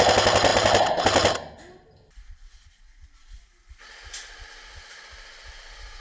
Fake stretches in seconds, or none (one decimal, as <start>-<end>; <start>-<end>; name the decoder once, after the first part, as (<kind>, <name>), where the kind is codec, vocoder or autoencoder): none